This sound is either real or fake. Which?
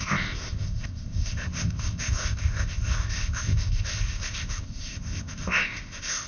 fake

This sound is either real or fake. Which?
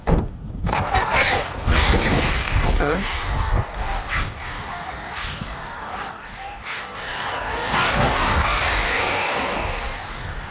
fake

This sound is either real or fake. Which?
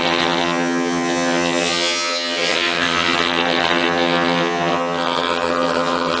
fake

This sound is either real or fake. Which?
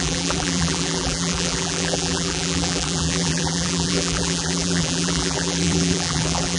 fake